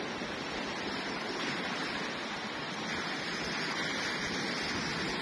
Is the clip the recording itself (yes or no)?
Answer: yes